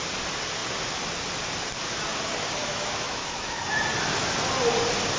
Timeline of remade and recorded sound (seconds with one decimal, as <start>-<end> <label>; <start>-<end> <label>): 0.0-2.6 recorded; 2.6-3.6 remade; 3.6-5.2 recorded